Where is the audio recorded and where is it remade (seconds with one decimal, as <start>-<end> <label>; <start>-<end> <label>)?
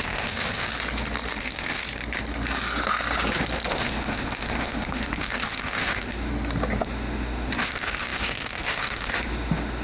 0.0-0.7 remade; 0.7-1.4 recorded; 1.4-1.8 remade; 1.8-3.7 recorded; 3.7-6.3 remade; 6.3-6.8 recorded; 6.8-9.8 remade